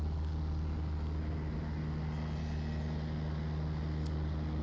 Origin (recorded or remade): recorded